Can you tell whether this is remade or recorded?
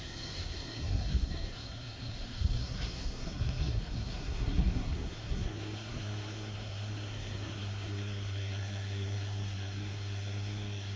remade